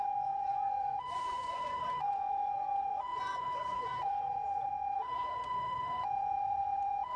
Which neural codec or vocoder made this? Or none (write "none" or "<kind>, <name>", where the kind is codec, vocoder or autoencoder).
vocoder, Vocos